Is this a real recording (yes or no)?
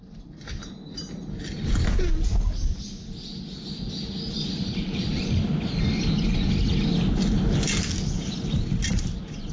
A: yes